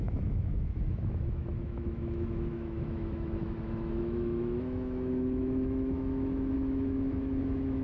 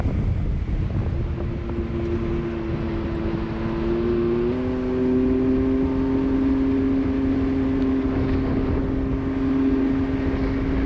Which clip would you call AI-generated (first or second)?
first